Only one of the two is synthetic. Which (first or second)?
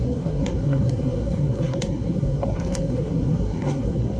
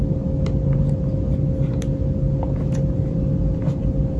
first